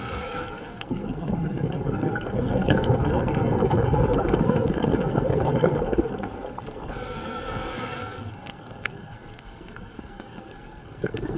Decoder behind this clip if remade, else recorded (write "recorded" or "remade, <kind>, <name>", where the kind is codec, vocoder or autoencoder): remade, codec, SNAC